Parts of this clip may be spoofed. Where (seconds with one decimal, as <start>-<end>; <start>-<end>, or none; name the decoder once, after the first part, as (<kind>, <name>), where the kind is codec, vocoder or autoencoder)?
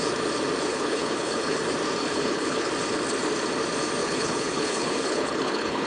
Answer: 0.7-1.6 (codec, HILCodec); 2.0-2.7; 4.0-5.9